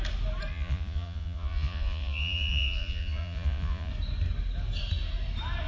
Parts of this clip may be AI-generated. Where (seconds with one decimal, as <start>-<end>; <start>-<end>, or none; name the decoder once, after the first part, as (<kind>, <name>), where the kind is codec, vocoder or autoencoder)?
0.5-3.9 (vocoder, Vocos)